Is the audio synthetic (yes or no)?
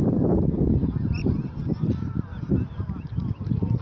no